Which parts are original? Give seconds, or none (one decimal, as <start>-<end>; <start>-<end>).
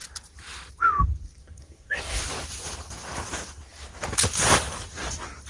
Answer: 0.0-1.4; 2.2-5.5